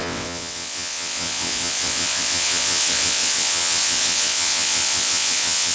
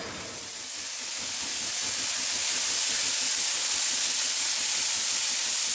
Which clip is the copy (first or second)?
first